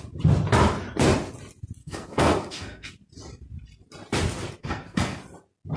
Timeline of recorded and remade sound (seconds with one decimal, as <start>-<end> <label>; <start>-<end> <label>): 0.0-1.8 recorded; 1.8-2.9 remade; 2.9-4.6 recorded; 4.6-5.2 remade; 5.2-5.8 recorded